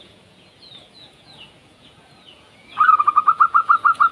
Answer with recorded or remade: remade